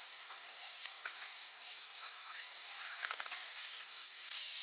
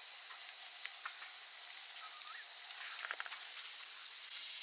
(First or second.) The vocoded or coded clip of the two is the first